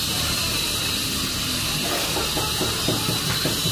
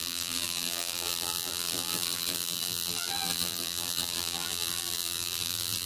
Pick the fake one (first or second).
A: second